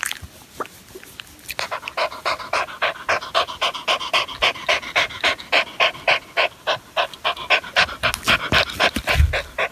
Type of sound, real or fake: real